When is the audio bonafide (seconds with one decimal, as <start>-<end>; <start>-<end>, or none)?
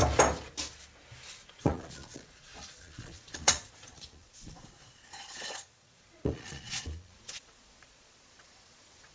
0.0-1.5